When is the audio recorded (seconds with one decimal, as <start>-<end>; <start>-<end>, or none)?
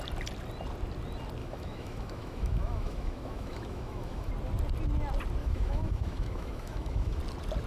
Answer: 0.0-1.4; 4.3-5.4; 7.2-7.7